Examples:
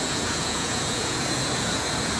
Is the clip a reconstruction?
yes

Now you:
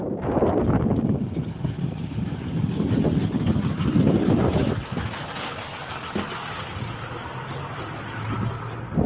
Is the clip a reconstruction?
no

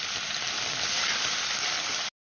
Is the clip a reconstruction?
no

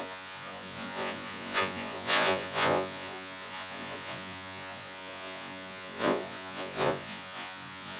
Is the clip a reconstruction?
yes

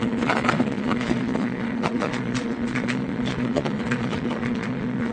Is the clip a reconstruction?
yes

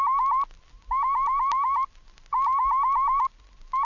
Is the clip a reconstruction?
no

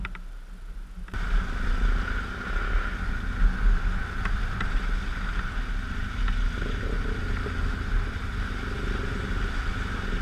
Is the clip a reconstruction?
no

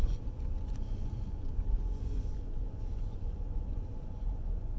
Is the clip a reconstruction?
yes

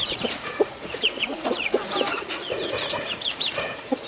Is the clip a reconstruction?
yes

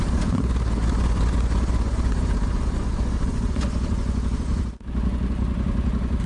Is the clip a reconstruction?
yes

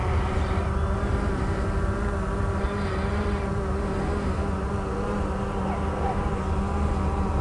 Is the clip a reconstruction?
no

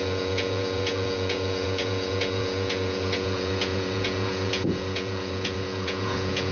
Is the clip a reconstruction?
yes